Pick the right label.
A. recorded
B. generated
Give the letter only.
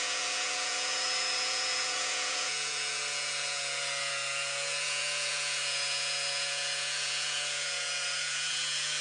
B